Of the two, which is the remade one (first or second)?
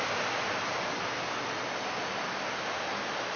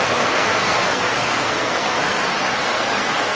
second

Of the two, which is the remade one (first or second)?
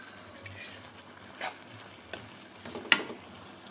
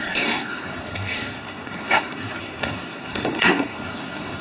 second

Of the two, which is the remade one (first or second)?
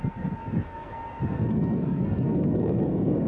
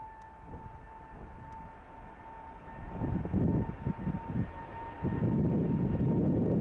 first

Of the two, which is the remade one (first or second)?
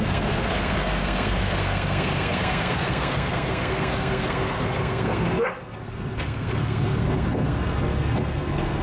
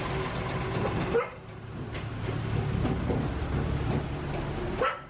first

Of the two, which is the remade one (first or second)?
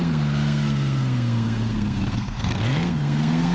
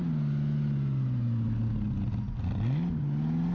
first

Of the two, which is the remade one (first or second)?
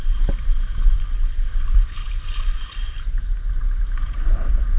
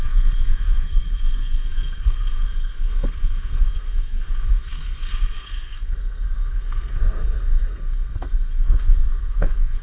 second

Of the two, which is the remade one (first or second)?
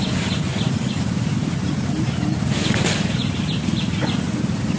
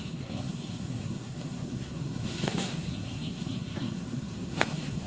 second